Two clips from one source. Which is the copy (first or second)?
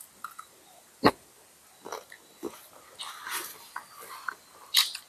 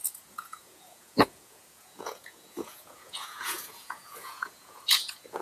second